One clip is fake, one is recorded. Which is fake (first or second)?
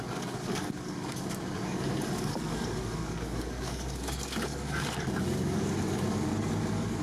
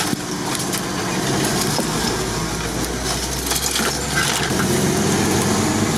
first